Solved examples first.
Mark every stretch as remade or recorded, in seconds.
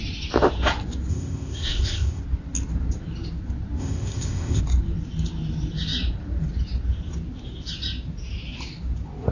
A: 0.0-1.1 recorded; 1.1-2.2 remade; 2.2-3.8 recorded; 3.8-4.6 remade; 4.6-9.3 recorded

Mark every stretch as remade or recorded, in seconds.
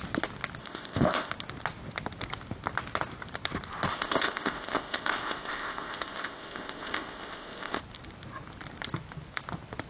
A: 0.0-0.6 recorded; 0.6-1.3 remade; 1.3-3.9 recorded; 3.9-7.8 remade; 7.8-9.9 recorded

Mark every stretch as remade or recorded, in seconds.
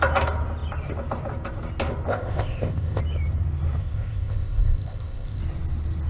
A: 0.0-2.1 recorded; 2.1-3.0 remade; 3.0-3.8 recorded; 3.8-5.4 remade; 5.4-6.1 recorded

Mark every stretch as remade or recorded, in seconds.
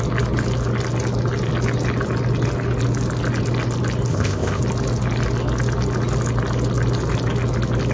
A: 0.0-4.1 recorded; 4.1-4.6 remade; 4.6-7.9 recorded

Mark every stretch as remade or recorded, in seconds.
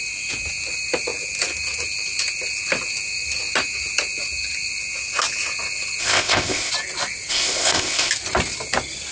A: 0.0-6.0 recorded; 6.0-6.7 remade; 6.7-7.3 recorded; 7.3-8.1 remade; 8.1-9.1 recorded